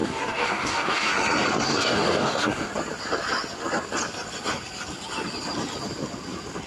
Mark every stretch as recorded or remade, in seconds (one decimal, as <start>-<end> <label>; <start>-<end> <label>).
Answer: 0.0-1.1 remade; 1.1-1.7 recorded; 1.7-2.7 remade; 2.7-6.7 recorded